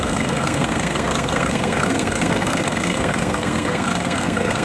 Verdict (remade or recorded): remade